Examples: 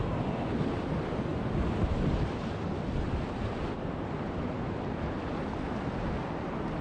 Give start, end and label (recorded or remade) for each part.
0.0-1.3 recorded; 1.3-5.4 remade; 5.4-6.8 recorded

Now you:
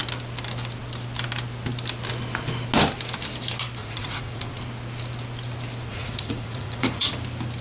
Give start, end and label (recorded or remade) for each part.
0.0-3.8 recorded; 3.8-4.6 remade; 4.6-5.9 recorded; 5.9-7.1 remade; 7.1-7.6 recorded

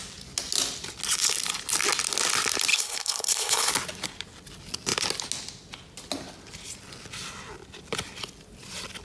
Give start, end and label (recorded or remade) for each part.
0.0-2.7 recorded; 2.7-3.7 remade; 3.7-9.0 recorded

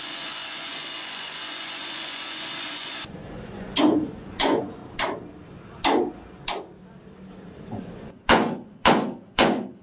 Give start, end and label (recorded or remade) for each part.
0.0-4.8 remade; 4.8-7.6 recorded; 7.6-9.8 remade